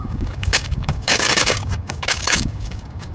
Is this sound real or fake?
fake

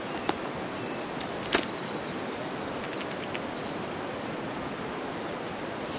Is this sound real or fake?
real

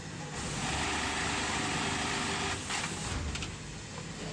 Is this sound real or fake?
real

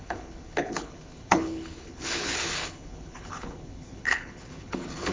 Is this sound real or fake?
fake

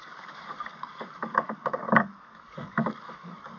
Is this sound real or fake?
fake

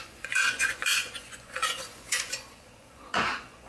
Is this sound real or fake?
fake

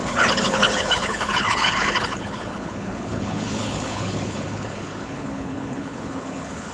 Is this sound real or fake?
fake